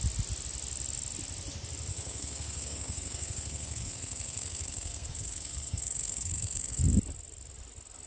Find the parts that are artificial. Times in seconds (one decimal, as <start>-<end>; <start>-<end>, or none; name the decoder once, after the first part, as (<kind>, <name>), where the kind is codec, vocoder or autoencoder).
1.9-6.8 (codec, SNAC)